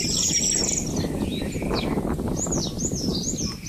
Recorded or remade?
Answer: recorded